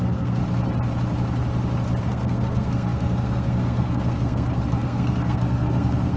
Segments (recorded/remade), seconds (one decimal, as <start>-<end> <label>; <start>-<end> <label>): 0.0-0.4 remade; 0.4-2.0 recorded; 2.0-6.2 remade